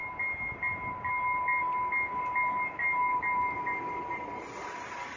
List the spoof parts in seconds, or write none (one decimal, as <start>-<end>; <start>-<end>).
none